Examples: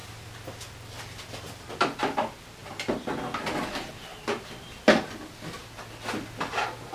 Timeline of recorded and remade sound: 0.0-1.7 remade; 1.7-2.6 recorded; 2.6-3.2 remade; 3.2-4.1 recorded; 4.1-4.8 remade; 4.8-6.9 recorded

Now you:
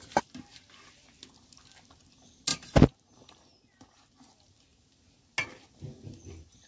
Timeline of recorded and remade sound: 0.0-6.7 recorded